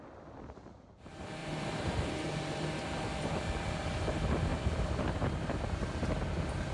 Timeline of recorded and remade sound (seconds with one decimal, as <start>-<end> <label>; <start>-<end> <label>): 0.0-1.4 recorded; 1.4-3.4 remade; 3.4-4.5 recorded; 4.5-5.3 remade; 5.3-6.7 recorded